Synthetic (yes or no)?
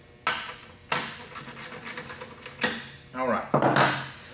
no